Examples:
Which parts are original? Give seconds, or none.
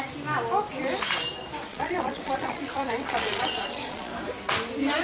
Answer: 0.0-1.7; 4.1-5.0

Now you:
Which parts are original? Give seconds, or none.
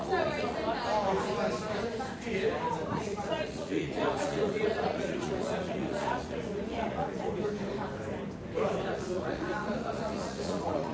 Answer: 0.6-2.9; 7.3-8.9